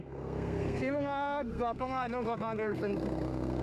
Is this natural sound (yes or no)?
no